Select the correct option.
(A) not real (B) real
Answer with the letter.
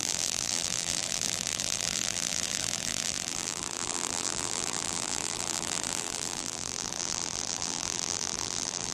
A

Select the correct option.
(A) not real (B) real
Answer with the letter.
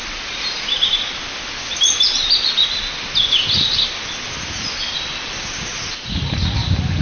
B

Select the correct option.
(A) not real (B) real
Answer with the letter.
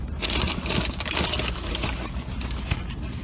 A